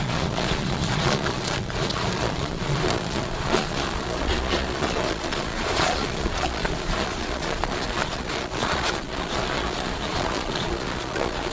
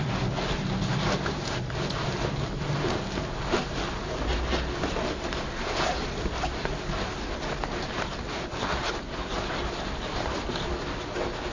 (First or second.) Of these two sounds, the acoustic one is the second